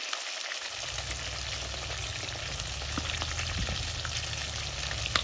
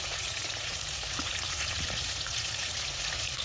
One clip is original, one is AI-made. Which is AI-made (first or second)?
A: second